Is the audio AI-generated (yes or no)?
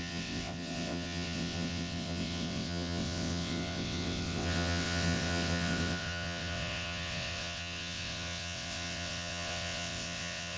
yes